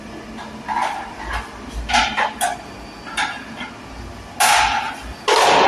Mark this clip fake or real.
real